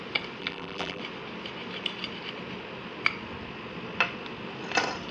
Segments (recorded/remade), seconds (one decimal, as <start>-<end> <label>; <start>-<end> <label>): 0.0-0.4 recorded; 0.4-1.0 remade; 1.0-5.1 recorded